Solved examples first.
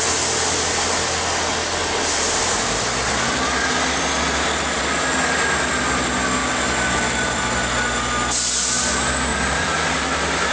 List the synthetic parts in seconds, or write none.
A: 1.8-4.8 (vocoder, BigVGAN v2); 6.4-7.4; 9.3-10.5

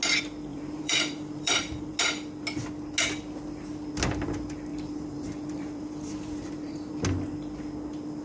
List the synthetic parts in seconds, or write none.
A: 0.5-2.0 (vocoder, BigVGAN v2); 4.7-6.9

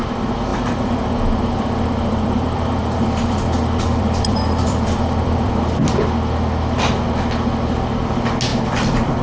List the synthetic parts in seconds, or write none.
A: 0.5-5.5 (vocoder, BigVGAN v2)